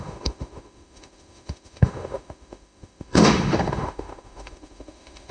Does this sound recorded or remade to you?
remade